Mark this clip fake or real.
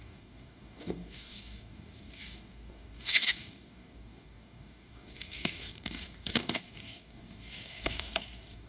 fake